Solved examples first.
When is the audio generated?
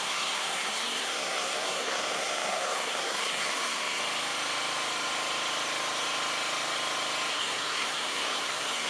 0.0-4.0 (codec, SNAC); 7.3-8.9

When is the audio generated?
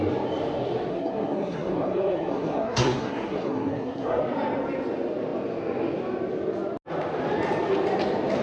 0.9-4.2 (codec, SNAC)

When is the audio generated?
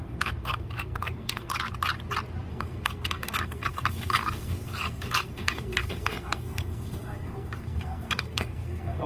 0.0-1.5 (codec, SNAC); 2.5-9.1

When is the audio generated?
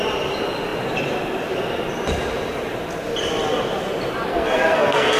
4.3-5.2 (codec, SNAC)